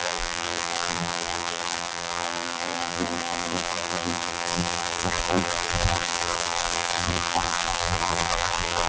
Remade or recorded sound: remade